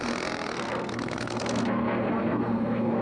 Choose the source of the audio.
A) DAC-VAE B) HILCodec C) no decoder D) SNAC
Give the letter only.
D